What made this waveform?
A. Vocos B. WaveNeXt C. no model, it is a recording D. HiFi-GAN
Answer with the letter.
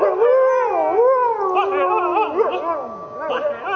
C